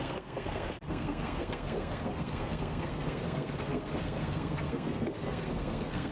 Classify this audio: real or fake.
fake